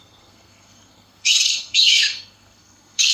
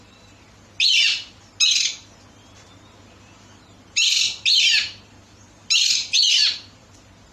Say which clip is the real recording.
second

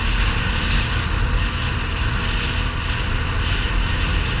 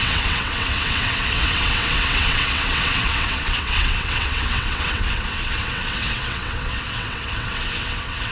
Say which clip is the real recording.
first